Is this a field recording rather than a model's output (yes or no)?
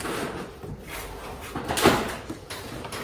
yes